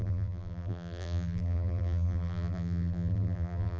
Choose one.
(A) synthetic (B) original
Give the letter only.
A